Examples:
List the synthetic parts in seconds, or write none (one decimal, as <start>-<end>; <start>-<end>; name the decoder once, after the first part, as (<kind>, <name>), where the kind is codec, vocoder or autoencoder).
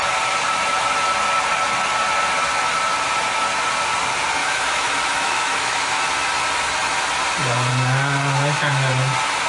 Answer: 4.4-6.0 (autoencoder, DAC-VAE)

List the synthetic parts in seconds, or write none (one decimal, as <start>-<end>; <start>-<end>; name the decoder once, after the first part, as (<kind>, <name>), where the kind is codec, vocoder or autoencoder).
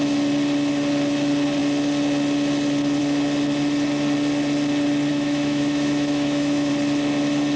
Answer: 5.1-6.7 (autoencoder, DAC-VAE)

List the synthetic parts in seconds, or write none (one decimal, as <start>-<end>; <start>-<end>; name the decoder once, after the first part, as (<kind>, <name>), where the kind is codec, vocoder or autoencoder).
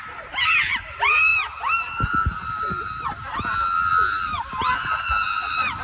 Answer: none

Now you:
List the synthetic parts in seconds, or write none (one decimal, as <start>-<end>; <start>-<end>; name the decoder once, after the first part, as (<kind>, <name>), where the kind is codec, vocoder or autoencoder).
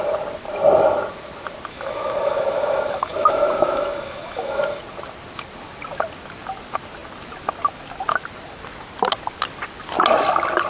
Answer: 1.7-4.8 (autoencoder, DAC-VAE)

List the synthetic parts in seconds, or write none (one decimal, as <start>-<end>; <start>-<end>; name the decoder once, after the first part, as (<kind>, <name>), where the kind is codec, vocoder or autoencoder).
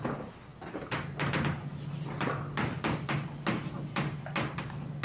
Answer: none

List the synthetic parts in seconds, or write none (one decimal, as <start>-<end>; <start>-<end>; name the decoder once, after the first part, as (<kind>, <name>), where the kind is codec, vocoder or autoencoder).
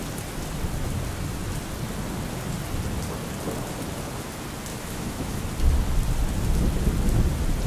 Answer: 4.7-5.4 (autoencoder, DAC-VAE)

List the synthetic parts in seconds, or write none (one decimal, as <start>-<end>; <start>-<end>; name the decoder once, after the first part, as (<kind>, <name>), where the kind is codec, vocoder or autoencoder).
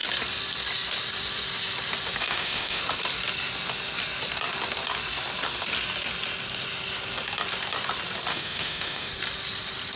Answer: 2.2-2.8 (autoencoder, DAC-VAE); 8.3-9.1